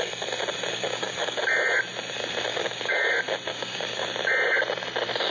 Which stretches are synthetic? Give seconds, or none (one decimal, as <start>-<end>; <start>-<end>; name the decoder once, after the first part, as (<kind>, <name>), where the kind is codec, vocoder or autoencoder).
0.7-1.4 (codec, DAC); 2.5-3.1; 3.5-4.1